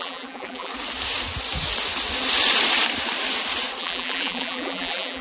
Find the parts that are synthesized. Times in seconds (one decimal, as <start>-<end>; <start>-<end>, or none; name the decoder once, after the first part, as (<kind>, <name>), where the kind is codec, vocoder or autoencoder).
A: 0.0-0.7 (vocoder, BigVGAN v2); 3.8-5.2